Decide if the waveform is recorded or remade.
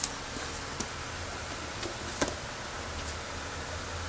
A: recorded